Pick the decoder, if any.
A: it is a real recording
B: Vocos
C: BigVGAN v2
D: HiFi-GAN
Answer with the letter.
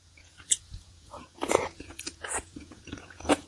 B